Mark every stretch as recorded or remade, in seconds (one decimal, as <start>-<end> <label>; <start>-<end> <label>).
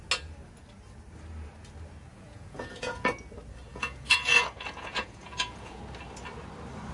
0.0-2.1 recorded; 2.1-3.1 remade; 3.1-3.7 recorded; 3.7-5.8 remade; 5.8-6.9 recorded